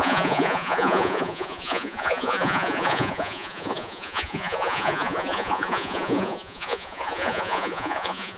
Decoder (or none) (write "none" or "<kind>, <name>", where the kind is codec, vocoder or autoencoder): vocoder, Vocos